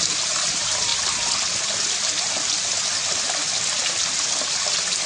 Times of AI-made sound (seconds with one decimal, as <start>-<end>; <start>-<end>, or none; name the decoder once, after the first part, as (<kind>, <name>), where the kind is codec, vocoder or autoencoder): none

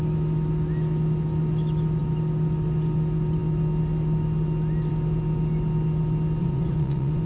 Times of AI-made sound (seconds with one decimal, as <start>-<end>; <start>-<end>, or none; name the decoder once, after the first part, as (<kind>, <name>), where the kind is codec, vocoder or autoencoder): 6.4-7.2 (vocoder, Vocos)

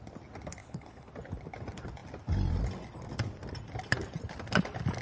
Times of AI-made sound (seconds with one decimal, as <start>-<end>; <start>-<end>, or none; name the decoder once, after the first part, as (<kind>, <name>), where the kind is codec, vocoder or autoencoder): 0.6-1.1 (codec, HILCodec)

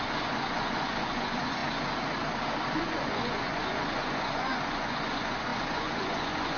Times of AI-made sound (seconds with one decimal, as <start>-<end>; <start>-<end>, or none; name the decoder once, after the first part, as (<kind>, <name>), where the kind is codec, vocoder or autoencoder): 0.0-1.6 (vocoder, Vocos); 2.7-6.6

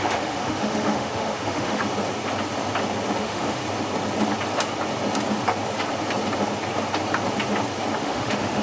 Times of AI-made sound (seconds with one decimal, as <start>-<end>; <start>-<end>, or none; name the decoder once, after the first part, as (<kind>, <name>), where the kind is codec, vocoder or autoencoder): 0.0-1.8 (autoencoder, DAC-VAE); 3.2-3.6; 8.0-8.6

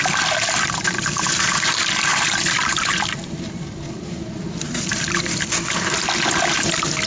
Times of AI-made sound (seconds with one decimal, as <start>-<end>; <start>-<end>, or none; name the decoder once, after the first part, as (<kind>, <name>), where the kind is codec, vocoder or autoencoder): 0.0-7.1 (vocoder, BigVGAN v2)